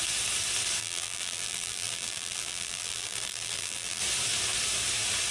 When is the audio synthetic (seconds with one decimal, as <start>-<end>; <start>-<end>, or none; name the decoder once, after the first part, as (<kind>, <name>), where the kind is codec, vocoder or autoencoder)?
0.8-4.0 (vocoder, BigVGAN v2)